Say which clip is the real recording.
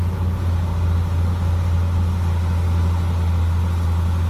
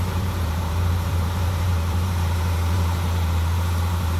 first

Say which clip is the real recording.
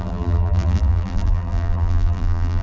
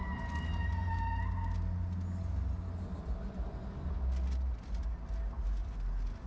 second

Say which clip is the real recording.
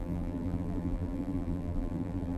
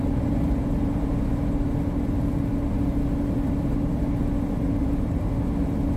second